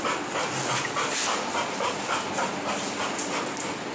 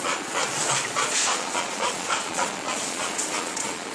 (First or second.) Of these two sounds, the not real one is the second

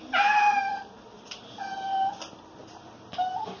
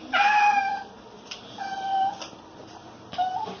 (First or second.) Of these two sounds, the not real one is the second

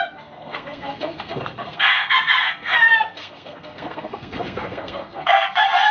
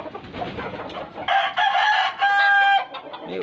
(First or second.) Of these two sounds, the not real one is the first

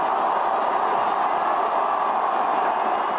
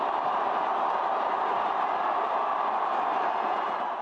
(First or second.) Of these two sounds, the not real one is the second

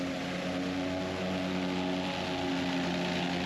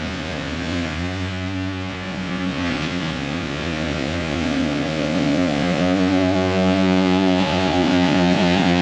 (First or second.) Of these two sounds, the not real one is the second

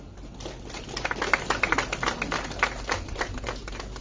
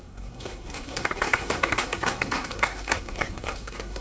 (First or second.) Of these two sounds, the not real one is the second